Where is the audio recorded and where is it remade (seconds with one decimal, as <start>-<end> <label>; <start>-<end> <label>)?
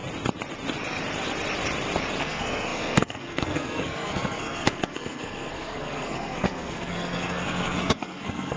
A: 0.0-2.2 recorded; 2.2-8.6 remade